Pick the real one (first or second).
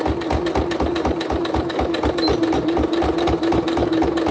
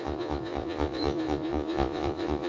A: first